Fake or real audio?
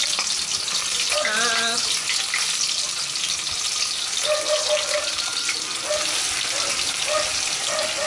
real